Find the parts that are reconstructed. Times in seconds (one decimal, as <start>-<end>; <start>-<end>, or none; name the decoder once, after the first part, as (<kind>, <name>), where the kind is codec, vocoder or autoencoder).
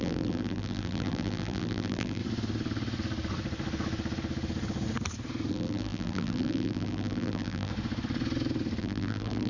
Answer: 0.0-2.2 (vocoder, BigVGAN v2); 5.5-7.7; 8.8-9.5